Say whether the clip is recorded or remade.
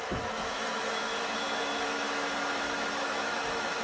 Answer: remade